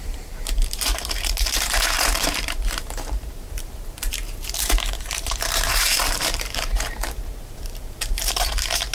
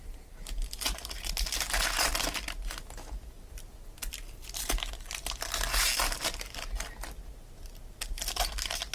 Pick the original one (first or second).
second